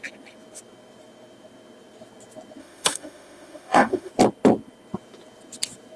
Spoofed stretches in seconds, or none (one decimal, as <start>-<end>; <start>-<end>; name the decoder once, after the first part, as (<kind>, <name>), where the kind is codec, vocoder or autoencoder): 2.6-4.1 (autoencoder, DAC-VAE)